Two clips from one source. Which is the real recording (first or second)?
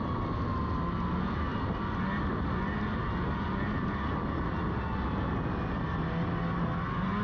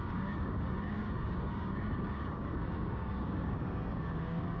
first